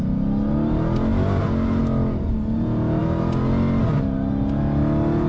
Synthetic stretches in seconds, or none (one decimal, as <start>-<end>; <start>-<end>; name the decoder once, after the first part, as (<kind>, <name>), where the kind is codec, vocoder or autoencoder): none